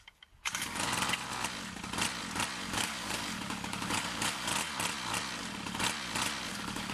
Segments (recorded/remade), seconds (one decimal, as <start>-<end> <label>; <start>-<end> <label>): 0.0-0.9 remade; 0.9-2.6 recorded; 2.6-4.5 remade; 4.5-6.5 recorded; 6.5-6.9 remade